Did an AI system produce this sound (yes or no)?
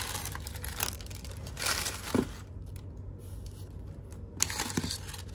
no